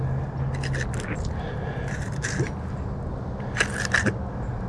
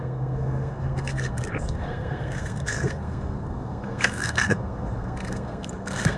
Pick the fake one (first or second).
second